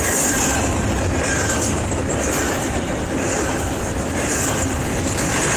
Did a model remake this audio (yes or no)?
no